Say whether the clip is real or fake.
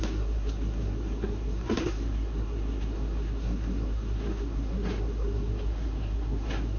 fake